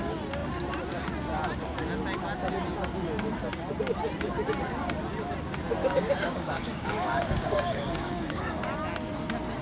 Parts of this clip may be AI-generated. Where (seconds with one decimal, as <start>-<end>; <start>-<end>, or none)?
5.8-8.6